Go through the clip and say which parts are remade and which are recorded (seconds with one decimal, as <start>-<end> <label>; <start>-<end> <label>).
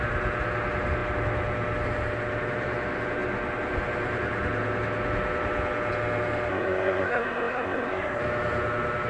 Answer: 0.0-6.5 recorded; 6.5-8.2 remade; 8.2-9.1 recorded